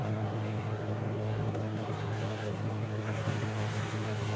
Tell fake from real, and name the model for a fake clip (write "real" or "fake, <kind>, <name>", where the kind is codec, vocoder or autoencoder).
fake, codec, SNAC